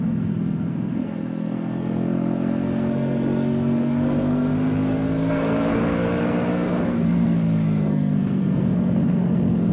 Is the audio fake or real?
fake